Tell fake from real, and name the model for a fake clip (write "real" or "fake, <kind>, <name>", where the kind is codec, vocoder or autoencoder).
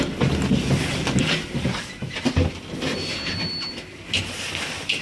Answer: real